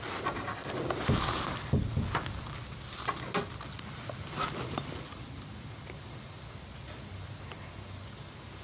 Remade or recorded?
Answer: recorded